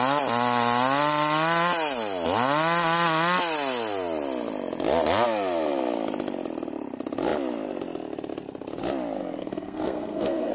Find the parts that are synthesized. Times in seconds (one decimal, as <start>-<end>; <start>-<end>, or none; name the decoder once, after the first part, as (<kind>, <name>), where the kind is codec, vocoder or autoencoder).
9.4-10.5 (codec, SNAC)